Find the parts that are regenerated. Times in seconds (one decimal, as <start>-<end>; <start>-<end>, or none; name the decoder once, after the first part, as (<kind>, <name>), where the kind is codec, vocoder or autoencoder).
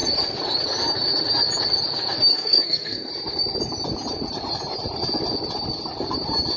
2.3-3.1 (codec, SNAC)